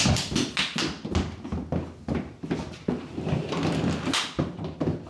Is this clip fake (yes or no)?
no